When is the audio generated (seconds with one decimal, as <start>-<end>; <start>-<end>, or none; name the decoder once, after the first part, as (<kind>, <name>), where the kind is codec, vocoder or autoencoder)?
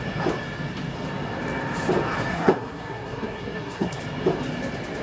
2.3-4.0 (codec, SNAC)